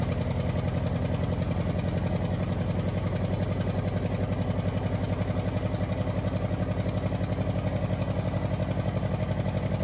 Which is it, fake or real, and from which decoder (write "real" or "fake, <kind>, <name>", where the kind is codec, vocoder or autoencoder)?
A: real